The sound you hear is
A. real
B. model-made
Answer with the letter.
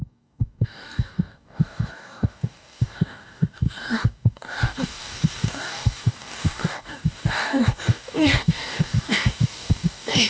B